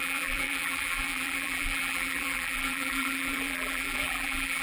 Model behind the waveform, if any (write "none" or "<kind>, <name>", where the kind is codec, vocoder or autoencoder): vocoder, BigVGAN v2